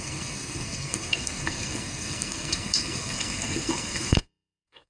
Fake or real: fake